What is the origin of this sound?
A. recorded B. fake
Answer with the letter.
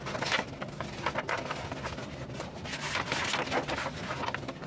A